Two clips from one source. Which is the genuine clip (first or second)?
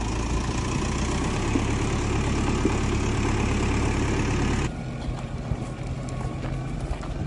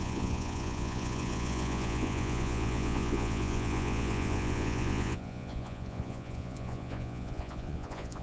first